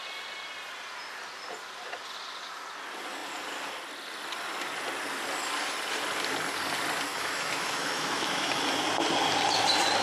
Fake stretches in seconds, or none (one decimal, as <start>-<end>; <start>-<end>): 7.1-8.6